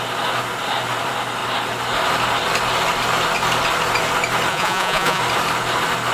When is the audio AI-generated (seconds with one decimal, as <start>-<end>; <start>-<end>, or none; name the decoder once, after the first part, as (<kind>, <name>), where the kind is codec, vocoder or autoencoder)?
4.5-5.2 (vocoder, Vocos)